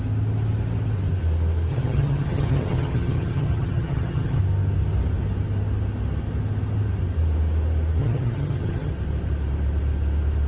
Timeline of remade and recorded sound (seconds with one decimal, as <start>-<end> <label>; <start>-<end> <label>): 0.0-1.7 recorded; 1.7-4.4 remade; 4.4-8.0 recorded; 8.0-8.9 remade; 8.9-10.5 recorded